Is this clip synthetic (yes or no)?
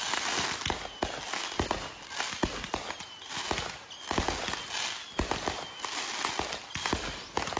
no